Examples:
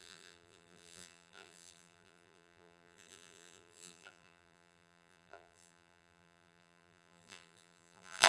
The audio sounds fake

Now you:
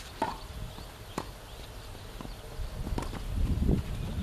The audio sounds fake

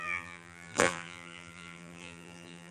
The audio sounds fake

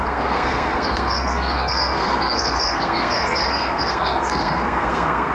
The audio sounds fake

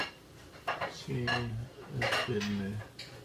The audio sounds real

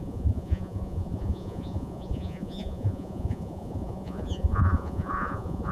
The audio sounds fake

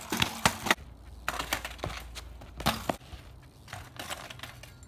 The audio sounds real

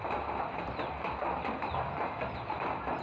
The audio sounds real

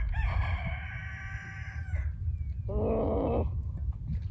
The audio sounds real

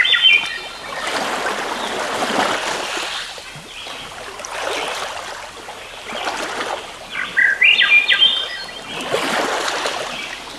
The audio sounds real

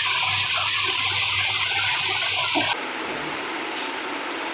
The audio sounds real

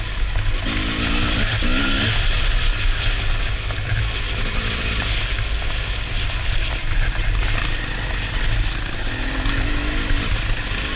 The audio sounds real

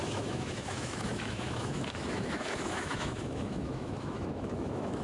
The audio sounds fake